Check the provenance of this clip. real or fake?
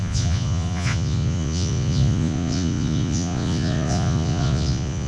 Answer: fake